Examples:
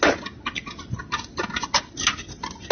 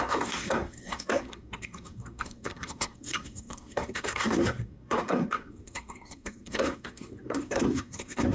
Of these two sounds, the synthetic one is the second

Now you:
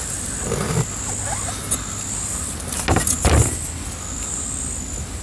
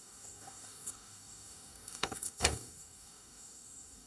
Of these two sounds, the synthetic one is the second